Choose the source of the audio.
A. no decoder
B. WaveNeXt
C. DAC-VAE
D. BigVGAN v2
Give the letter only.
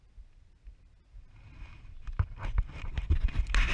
A